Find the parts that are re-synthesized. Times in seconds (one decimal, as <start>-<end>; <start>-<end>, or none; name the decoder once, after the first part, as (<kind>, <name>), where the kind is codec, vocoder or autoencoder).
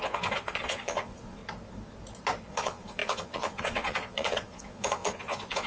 0.0-1.4 (vocoder, Vocos); 2.5-5.7